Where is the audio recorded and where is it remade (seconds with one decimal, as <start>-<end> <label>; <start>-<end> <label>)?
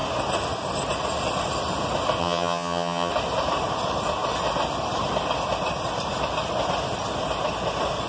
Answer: 0.0-2.2 recorded; 2.2-3.1 remade; 3.1-8.1 recorded